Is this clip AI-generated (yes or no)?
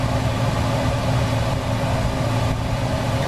no